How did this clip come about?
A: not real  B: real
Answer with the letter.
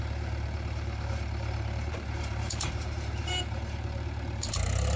A